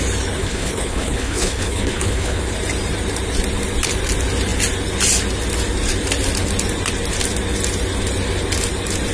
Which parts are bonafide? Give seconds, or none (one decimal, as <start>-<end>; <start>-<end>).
0.0-0.4; 2.4-9.1